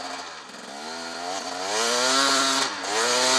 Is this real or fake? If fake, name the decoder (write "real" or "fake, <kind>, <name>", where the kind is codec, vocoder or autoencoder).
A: real